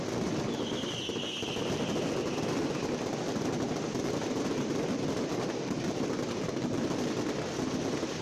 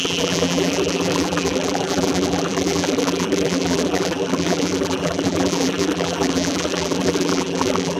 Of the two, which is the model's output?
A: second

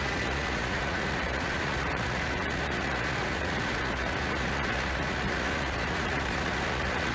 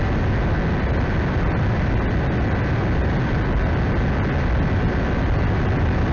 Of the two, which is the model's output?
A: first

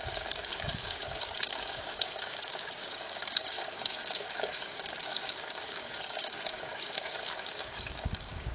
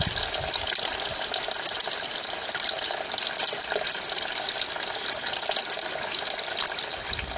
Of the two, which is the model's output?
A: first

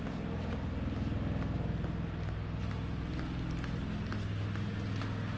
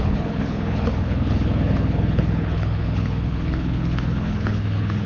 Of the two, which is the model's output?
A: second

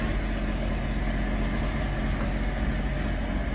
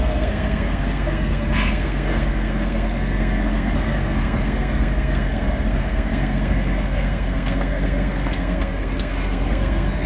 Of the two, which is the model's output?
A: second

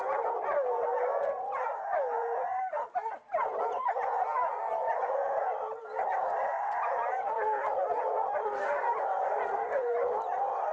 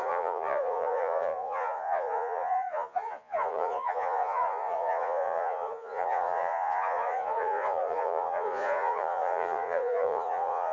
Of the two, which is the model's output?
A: second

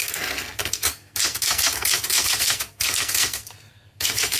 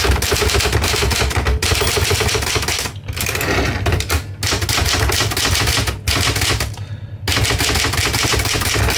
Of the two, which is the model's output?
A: first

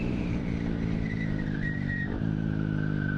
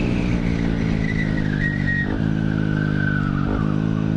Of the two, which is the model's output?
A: first